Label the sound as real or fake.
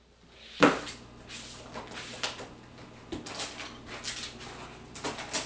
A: real